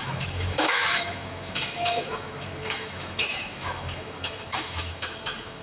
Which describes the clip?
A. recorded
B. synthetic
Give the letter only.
B